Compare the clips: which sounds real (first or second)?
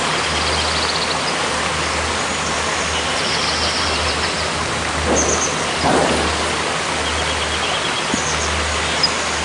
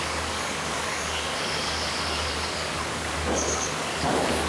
first